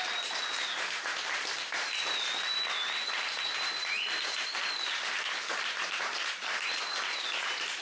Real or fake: real